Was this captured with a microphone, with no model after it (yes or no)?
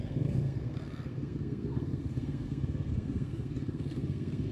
no